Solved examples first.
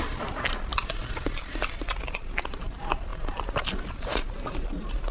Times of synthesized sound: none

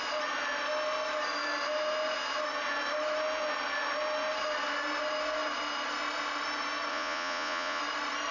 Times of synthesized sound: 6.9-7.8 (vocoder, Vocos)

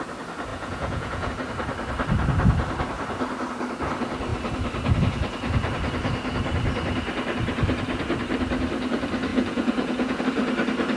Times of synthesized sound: 0.5-1.3 (vocoder, Vocos); 9.3-10.2